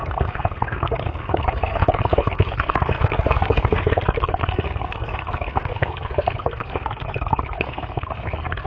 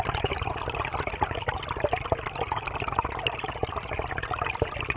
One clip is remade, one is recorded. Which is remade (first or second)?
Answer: first